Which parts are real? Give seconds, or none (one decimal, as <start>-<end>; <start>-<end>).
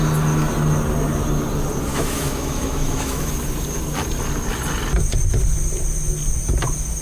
0.0-1.9; 3.3-7.0